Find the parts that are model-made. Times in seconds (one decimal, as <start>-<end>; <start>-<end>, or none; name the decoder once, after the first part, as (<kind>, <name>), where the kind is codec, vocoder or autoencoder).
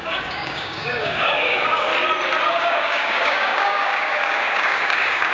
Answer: 0.0-1.9 (codec, DAC); 2.5-5.3